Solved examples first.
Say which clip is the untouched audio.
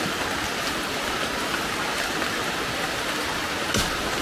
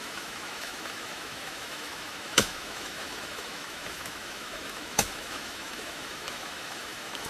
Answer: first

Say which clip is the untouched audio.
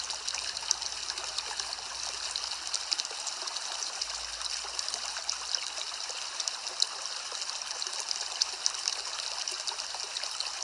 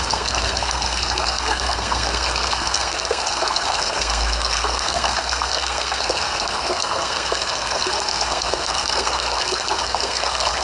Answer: first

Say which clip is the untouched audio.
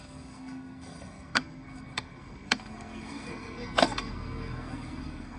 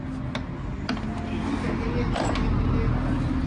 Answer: second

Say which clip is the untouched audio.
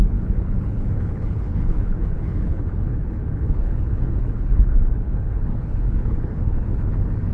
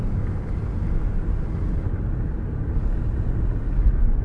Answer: second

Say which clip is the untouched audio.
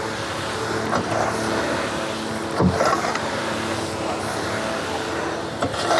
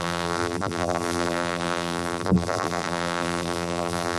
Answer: first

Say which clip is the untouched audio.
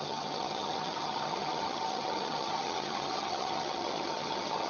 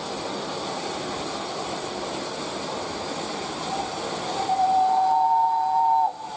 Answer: second